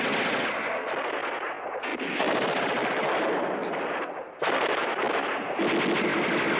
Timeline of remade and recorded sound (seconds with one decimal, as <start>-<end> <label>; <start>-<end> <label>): 0.0-1.9 recorded; 1.9-5.1 remade; 5.1-6.6 recorded